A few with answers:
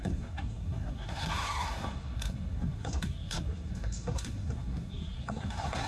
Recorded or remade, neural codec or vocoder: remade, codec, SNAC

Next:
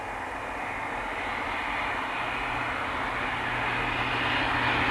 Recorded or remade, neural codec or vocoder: recorded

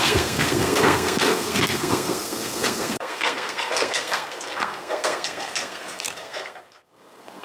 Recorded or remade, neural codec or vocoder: remade, codec, SNAC